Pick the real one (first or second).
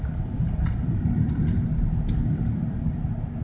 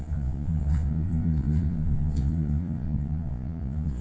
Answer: first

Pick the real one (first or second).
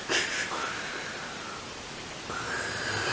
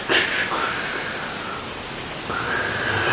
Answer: second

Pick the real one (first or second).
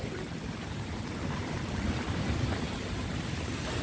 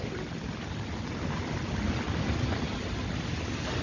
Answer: second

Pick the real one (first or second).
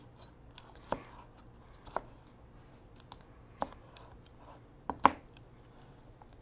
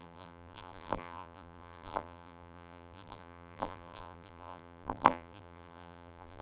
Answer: first